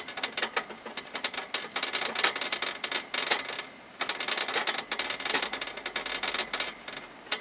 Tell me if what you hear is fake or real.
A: real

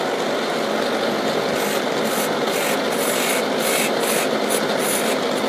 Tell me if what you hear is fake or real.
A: real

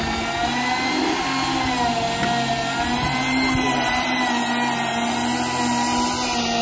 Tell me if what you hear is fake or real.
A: real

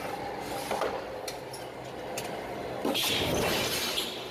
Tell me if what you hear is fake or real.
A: real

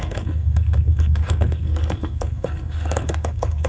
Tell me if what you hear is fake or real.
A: fake